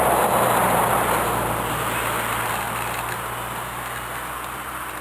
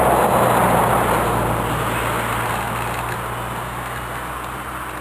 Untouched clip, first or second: second